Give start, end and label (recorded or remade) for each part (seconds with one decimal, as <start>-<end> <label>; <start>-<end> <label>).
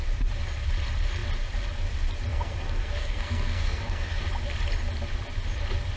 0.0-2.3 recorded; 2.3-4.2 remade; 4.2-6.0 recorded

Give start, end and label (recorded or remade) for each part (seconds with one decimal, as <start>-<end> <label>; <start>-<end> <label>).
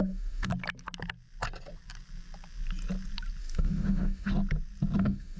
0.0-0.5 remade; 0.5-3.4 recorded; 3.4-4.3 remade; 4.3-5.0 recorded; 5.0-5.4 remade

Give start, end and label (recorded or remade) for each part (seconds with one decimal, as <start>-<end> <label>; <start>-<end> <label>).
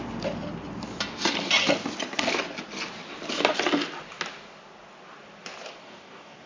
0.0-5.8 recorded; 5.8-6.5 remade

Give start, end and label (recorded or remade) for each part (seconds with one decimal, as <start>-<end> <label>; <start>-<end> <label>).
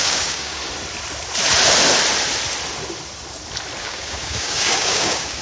0.0-0.6 remade; 0.6-3.8 recorded; 3.8-5.4 remade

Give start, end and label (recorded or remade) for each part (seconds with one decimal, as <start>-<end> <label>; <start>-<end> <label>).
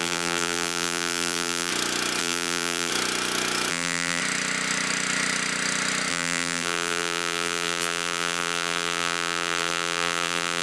0.0-1.7 remade; 1.7-2.2 recorded; 2.2-2.9 remade; 2.9-3.7 recorded; 3.7-4.2 remade; 4.2-6.1 recorded; 6.1-10.6 remade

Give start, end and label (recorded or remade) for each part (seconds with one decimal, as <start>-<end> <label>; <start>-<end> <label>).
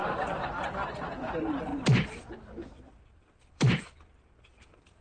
0.0-1.7 remade; 1.7-2.9 recorded; 2.9-5.0 remade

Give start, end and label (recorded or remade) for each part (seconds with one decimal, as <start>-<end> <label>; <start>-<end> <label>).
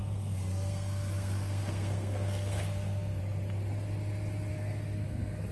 0.0-3.2 remade; 3.2-4.5 recorded; 4.5-5.5 remade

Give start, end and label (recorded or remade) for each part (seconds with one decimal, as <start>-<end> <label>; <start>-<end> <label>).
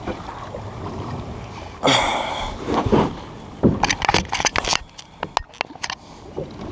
0.0-6.7 recorded